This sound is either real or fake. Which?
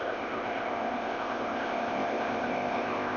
fake